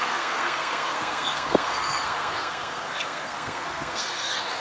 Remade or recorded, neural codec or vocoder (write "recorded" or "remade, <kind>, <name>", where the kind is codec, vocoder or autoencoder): remade, codec, SNAC